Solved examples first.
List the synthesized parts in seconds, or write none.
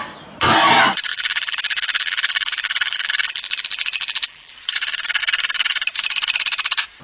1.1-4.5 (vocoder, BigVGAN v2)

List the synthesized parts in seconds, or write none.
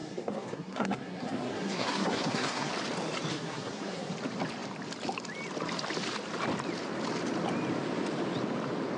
0.0-2.7 (codec, SNAC); 3.3-4.1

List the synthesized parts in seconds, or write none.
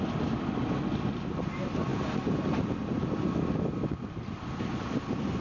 none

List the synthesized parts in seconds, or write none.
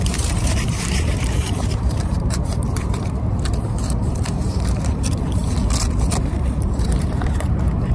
0.0-5.4 (vocoder, BigVGAN v2); 6.2-7.9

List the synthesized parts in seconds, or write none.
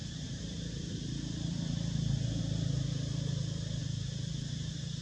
0.0-2.4 (vocoder, BigVGAN v2); 3.8-4.5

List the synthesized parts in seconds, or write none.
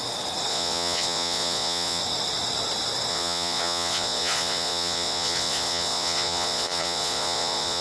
0.5-2.0 (vocoder, Vocos); 3.1-7.8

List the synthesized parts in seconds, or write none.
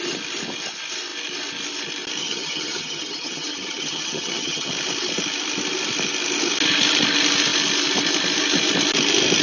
2.2-4.7 (vocoder, HiFi-GAN)